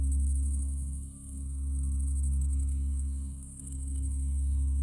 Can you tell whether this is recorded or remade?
remade